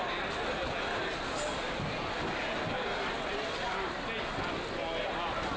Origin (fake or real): real